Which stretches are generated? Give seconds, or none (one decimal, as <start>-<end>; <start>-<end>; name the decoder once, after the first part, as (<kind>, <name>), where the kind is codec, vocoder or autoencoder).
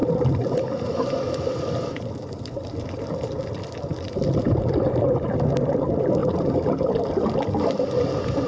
0.0-5.0 (vocoder, BigVGAN v2); 6.2-8.5